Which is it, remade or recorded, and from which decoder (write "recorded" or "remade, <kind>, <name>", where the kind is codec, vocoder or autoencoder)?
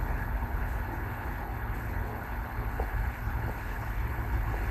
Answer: remade, codec, HILCodec